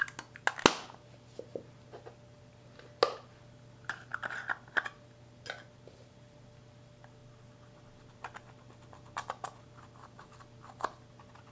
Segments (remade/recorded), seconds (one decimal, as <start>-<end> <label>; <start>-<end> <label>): 0.0-11.5 recorded